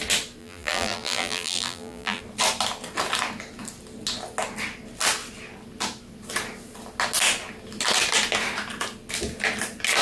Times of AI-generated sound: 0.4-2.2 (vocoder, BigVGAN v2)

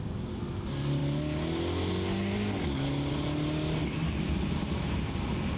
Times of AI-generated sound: 3.8-5.1 (vocoder, BigVGAN v2)

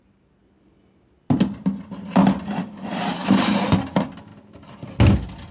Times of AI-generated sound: 0.0-0.4 (vocoder, BigVGAN v2); 2.6-4.3

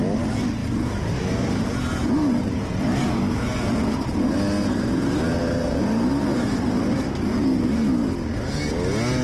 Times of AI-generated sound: 0.6-1.2 (vocoder, BigVGAN v2); 2.0-3.2; 5.4-7.9

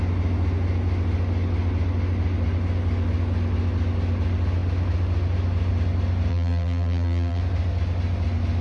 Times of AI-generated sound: 6.3-7.4 (vocoder, BigVGAN v2)

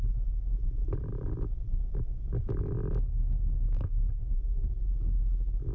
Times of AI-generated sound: 0.8-2.7 (vocoder, BigVGAN v2); 4.2-4.8

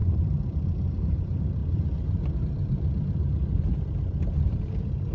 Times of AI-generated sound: 0.0-5.1 (vocoder, BigVGAN v2)

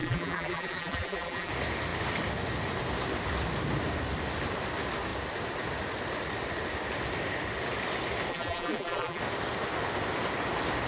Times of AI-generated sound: 0.0-1.5 (vocoder, BigVGAN v2); 8.3-9.2